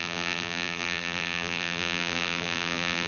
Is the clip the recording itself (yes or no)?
no